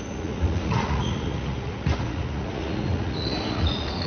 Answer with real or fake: fake